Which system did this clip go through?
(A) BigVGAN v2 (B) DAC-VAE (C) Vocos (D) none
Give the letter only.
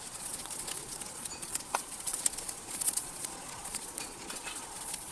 C